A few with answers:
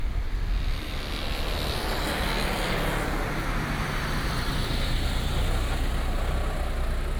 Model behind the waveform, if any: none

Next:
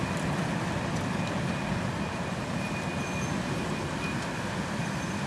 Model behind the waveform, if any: none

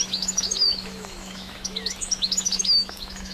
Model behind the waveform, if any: autoencoder, DAC-VAE